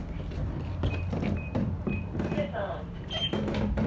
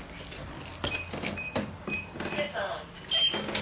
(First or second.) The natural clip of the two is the second